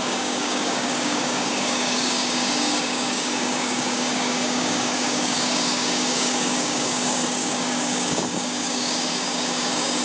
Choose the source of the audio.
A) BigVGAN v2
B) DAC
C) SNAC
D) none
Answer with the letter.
B